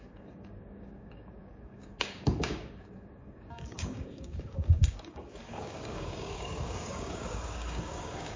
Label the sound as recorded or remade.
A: remade